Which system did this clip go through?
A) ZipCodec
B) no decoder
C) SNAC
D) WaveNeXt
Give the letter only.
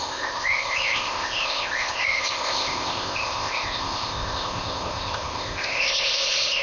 A